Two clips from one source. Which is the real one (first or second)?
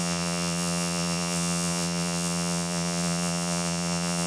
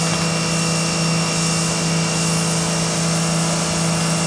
second